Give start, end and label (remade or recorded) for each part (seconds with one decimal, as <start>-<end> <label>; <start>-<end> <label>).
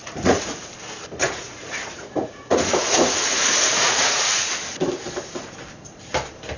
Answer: 0.0-0.7 remade; 0.7-1.2 recorded; 1.2-4.5 remade; 4.5-6.6 recorded